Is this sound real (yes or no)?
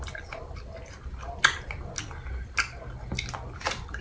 yes